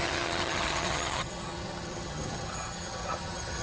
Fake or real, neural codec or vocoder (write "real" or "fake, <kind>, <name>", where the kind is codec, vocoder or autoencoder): fake, vocoder, HiFi-GAN